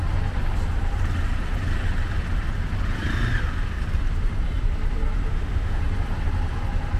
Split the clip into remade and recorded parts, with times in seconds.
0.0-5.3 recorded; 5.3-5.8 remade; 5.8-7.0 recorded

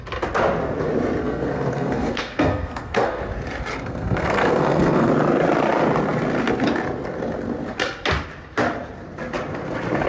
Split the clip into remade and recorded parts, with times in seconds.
0.0-1.2 recorded; 1.2-3.2 remade; 3.2-3.7 recorded; 3.7-5.1 remade; 5.1-10.1 recorded

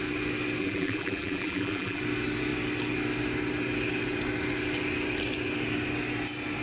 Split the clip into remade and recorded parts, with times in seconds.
0.0-0.6 recorded; 0.6-2.0 remade; 2.0-6.6 recorded

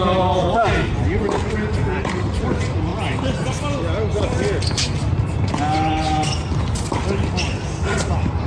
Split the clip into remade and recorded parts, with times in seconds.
0.0-8.5 recorded

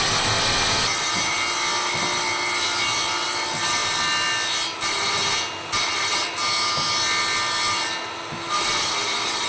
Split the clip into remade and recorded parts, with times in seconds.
0.0-9.5 recorded

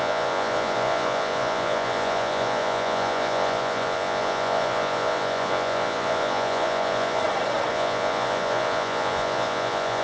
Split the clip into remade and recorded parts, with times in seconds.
0.0-7.2 remade; 7.2-7.7 recorded; 7.7-10.0 remade